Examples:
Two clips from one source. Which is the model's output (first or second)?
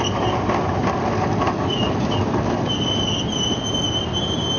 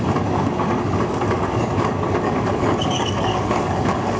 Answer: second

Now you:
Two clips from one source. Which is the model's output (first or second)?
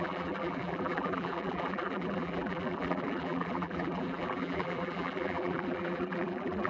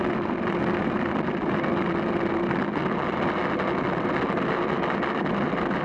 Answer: first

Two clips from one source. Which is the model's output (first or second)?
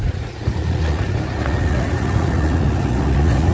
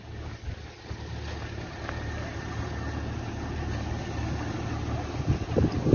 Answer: first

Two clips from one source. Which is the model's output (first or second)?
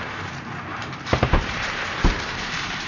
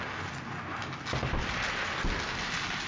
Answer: first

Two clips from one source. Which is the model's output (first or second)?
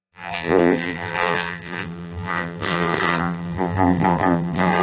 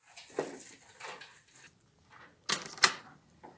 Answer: first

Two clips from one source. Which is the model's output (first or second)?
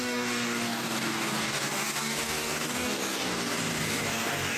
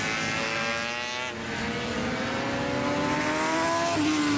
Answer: first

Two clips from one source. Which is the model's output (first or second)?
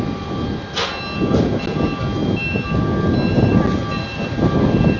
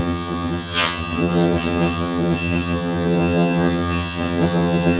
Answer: second